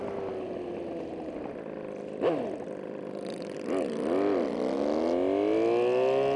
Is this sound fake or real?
real